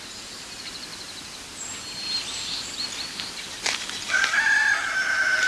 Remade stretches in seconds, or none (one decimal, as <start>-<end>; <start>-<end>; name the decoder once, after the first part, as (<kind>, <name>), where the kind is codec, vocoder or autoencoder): none